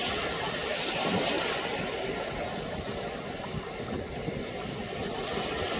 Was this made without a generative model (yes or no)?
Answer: yes